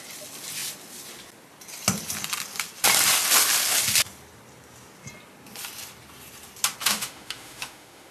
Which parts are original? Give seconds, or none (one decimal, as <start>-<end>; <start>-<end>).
0.0-6.8